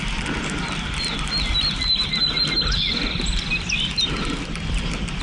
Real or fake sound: real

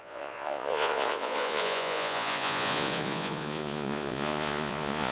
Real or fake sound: fake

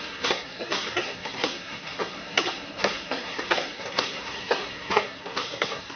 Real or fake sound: fake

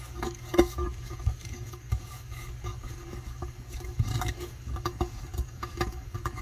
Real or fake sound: fake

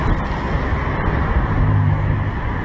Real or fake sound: real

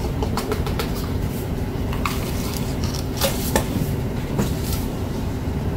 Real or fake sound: fake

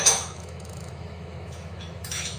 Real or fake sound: fake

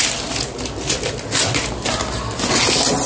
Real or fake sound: real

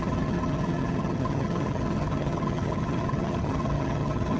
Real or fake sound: fake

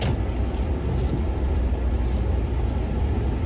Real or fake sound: real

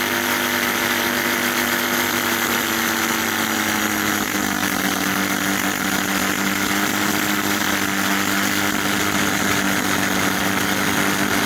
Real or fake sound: real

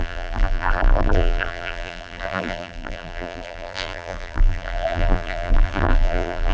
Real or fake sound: fake